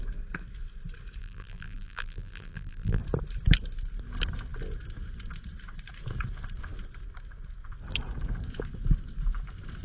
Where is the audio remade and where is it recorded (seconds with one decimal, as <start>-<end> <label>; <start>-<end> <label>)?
0.0-1.2 recorded; 1.2-3.0 remade; 3.0-9.8 recorded